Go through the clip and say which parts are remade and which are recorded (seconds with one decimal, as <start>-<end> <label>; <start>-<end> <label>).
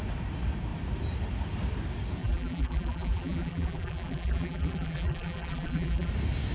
0.0-2.2 recorded; 2.2-6.1 remade; 6.1-6.5 recorded